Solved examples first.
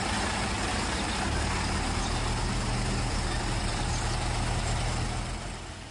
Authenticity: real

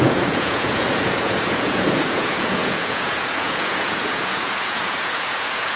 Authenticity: fake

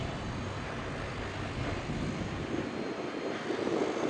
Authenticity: real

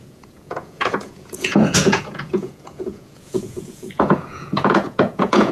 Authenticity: fake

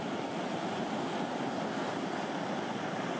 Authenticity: real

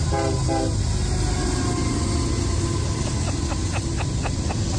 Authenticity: real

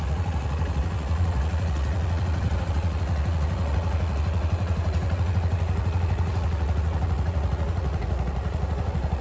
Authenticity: fake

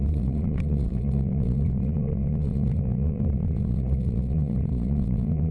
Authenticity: fake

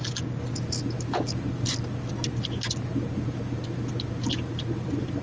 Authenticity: real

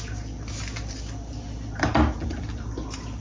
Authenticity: real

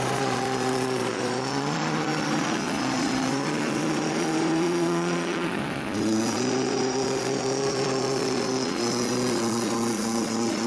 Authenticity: fake